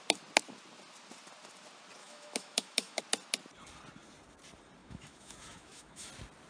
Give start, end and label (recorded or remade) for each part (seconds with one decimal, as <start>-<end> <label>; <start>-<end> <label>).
0.0-2.0 recorded; 2.0-3.0 remade; 3.0-4.8 recorded; 4.8-6.1 remade; 6.1-6.5 recorded